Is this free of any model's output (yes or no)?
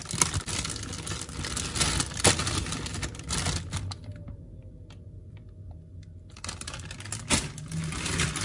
yes